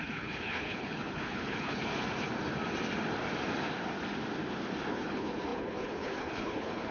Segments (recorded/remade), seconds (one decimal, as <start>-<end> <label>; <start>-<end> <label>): 0.0-1.9 remade; 1.9-4.9 recorded; 4.9-6.9 remade